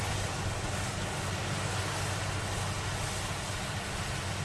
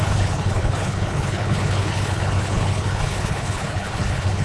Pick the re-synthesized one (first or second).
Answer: second